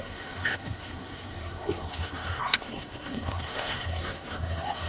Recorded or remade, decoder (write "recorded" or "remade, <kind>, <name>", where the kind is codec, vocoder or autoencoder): remade, codec, SNAC